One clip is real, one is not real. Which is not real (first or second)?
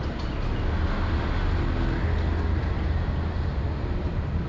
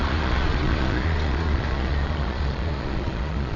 second